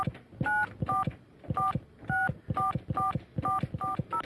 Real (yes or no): yes